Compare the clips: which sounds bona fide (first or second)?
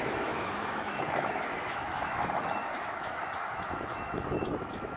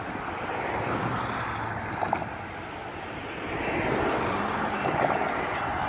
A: second